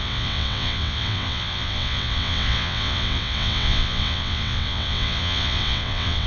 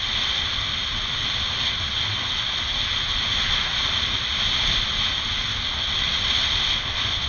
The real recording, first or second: second